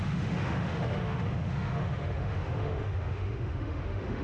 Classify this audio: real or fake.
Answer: fake